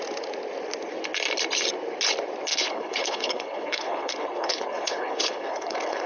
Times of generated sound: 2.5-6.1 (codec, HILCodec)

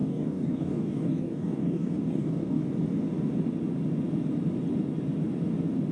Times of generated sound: 0.0-2.6 (codec, DAC)

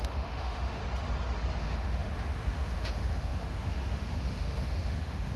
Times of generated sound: 0.0-0.8 (autoencoder, DAC-VAE); 1.6-5.4

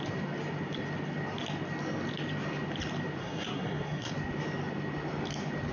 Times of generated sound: 3.2-4.1 (codec, SNAC)

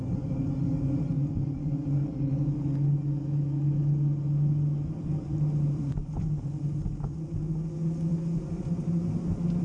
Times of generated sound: none

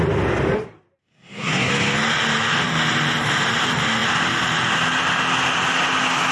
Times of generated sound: 1.0-1.7 (codec, SNAC)